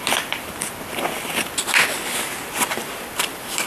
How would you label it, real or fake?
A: fake